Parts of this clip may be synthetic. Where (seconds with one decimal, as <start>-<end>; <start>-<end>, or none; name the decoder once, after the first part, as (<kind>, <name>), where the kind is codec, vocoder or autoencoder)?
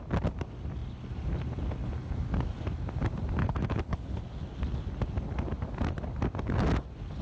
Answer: 3.4-4.2 (codec, HILCodec)